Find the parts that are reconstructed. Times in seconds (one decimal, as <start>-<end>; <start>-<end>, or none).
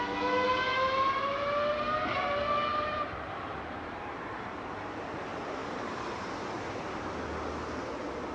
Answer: 2.7-5.1; 5.6-6.3